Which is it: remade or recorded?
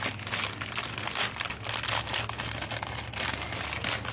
recorded